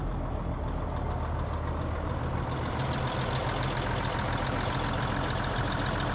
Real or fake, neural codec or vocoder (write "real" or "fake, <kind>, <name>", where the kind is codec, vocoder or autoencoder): real